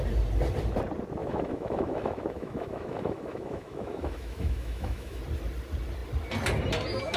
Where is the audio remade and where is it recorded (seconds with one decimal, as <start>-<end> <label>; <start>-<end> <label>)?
0.0-1.2 recorded; 1.2-5.2 remade; 5.2-7.2 recorded